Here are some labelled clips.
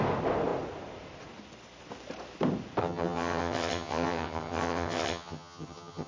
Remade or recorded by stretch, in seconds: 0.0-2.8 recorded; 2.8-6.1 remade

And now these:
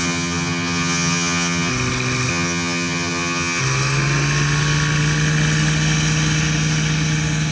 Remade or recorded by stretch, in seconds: 0.0-1.7 remade; 1.7-2.3 recorded; 2.3-3.6 remade; 3.6-7.5 recorded

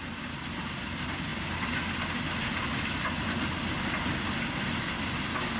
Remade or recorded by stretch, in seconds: 0.0-5.6 recorded